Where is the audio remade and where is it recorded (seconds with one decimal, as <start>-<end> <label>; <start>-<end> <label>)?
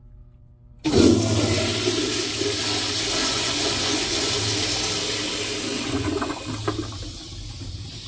0.0-3.2 recorded; 3.2-4.4 remade; 4.4-5.7 recorded; 5.7-6.4 remade; 6.4-8.1 recorded